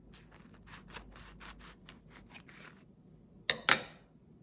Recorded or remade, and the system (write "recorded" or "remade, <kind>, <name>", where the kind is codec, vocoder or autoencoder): recorded